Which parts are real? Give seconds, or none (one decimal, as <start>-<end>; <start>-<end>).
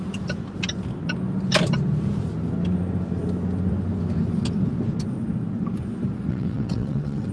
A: 0.0-6.3